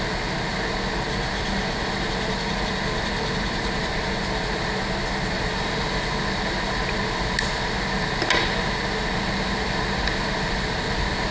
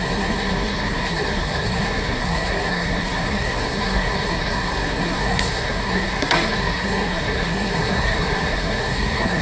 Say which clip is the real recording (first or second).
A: first